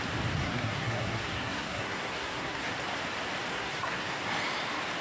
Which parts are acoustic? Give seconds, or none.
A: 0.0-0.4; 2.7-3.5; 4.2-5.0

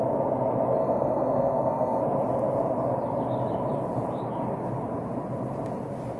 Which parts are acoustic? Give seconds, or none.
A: 0.0-0.8; 2.0-6.2

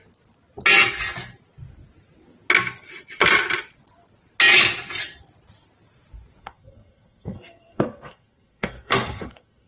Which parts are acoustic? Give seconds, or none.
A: 0.0-6.4

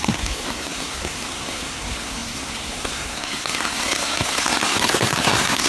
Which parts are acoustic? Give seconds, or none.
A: none

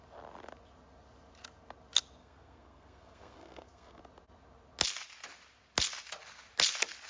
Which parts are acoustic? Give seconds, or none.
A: 0.0-2.2; 4.0-7.1

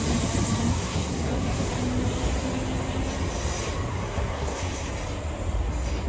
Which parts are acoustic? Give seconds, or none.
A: 0.0-0.7; 1.7-3.9; 4.9-6.1